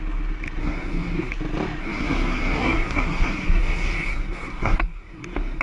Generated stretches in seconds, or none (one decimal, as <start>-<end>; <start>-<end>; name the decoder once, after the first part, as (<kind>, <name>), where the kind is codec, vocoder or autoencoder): 0.6-1.3 (codec, SNAC); 1.8-5.6